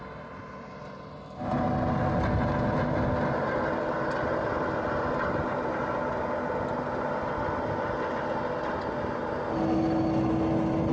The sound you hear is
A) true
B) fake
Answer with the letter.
A